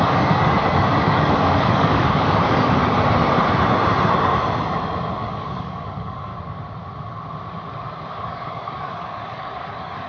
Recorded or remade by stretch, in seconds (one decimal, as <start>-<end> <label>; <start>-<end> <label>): 0.0-2.8 remade; 2.8-5.1 recorded; 5.1-6.3 remade; 6.3-8.1 recorded; 8.1-10.1 remade